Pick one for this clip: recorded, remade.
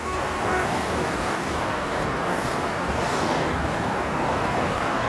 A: remade